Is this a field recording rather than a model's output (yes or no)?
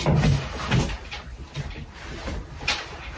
yes